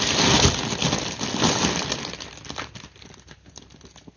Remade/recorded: recorded